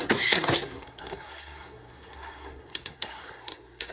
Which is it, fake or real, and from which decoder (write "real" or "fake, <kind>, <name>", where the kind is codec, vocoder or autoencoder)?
fake, codec, SNAC